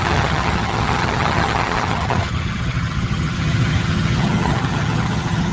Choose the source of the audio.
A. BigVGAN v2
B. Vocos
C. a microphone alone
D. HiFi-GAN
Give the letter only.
D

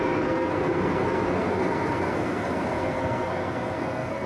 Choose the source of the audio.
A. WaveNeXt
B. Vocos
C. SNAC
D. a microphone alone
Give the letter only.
C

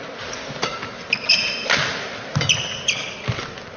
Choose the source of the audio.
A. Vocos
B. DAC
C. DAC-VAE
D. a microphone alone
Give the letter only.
D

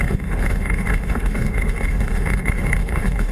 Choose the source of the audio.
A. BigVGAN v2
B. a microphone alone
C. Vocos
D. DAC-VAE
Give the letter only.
D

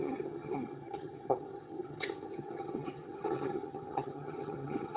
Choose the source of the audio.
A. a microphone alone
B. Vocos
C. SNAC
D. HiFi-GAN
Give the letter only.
D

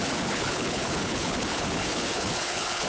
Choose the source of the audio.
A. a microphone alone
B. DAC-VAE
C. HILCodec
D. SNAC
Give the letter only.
C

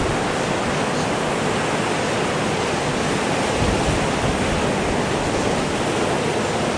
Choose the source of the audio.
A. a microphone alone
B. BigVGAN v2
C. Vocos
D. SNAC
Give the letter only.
A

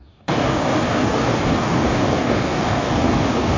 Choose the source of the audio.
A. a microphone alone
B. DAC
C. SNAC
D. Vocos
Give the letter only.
B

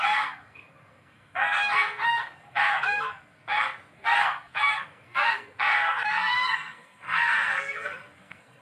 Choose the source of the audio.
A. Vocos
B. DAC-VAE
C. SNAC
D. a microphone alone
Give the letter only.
C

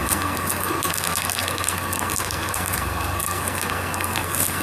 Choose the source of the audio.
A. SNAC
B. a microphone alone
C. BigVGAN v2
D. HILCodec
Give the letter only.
A